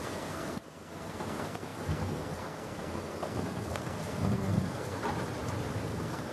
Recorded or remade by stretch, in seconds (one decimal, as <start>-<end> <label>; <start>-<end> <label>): 0.0-5.0 remade; 5.0-5.8 recorded; 5.8-6.3 remade